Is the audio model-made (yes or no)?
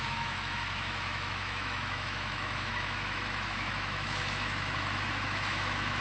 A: yes